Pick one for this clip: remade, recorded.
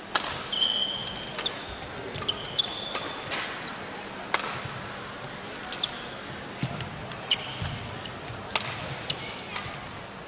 recorded